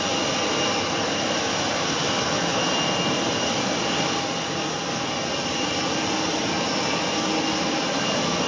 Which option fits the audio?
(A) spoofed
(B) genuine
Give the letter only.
B